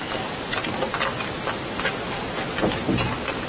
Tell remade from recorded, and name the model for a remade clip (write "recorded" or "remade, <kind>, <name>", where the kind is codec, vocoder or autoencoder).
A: recorded